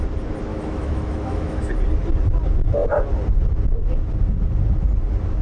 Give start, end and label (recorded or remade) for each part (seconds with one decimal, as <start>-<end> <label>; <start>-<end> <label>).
0.0-0.5 recorded; 0.5-1.7 remade; 1.7-5.4 recorded